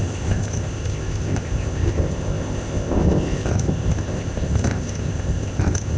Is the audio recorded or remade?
remade